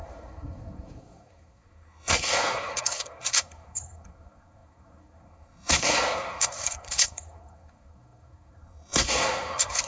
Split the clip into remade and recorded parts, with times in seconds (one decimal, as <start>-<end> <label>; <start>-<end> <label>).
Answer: 0.0-9.9 remade

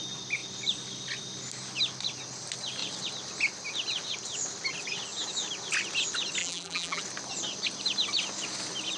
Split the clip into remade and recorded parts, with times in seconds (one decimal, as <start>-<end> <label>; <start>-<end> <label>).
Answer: 0.0-6.4 recorded; 6.4-7.0 remade; 7.0-9.0 recorded

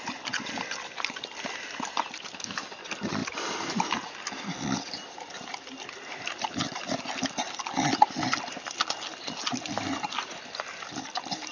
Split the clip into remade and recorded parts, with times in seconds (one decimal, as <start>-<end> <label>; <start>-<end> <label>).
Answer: 0.0-11.5 recorded

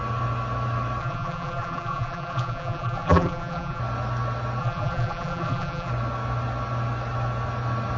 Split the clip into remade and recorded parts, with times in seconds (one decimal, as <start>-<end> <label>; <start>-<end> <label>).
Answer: 0.0-1.0 recorded; 1.0-3.8 remade; 3.8-4.6 recorded; 4.6-5.9 remade; 5.9-8.0 recorded

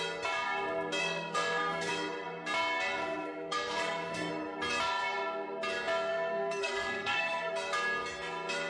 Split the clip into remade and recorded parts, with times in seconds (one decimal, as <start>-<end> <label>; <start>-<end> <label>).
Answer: 0.0-1.0 recorded; 1.0-1.9 remade; 1.9-3.0 recorded; 3.0-4.3 remade; 4.3-6.1 recorded; 6.1-7.5 remade; 7.5-8.7 recorded